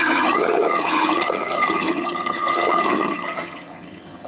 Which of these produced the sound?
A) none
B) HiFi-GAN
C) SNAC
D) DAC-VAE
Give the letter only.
B